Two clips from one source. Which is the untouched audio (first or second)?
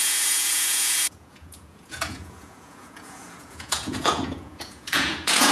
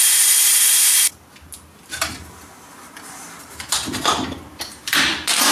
second